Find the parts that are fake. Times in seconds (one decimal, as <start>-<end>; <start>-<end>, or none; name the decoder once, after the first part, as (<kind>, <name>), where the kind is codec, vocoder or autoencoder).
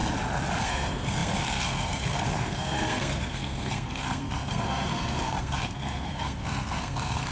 0.6-7.3 (codec, SNAC)